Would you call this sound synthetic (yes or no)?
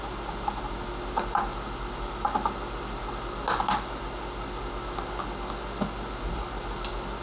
no